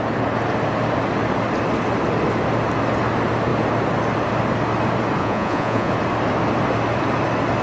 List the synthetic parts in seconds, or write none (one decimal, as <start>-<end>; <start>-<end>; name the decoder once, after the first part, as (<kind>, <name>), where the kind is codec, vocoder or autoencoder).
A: 5.2-5.9 (vocoder, Vocos)